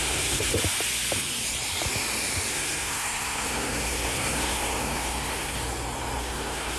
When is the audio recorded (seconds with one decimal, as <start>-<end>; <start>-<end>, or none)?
0.5-2.5; 5.6-6.2